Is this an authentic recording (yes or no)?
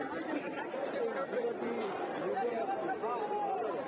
no